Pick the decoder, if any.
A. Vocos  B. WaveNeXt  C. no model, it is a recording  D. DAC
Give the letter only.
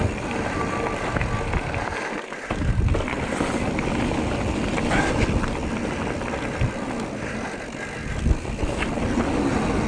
C